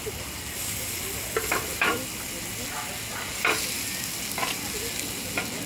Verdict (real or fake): real